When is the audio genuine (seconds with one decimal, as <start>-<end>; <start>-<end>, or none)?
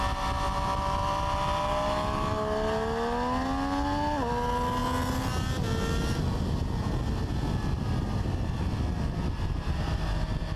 0.0-10.6